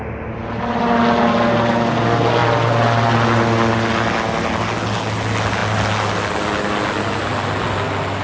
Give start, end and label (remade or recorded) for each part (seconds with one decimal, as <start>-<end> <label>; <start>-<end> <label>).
0.0-8.2 recorded